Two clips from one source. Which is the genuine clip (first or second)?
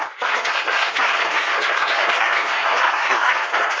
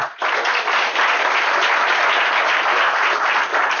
second